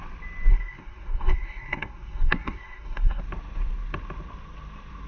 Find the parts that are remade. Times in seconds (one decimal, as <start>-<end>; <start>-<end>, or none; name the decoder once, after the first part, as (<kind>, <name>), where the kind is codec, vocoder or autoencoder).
0.5-3.2 (codec, SNAC)